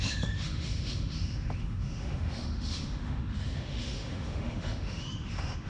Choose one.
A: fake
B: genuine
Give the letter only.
A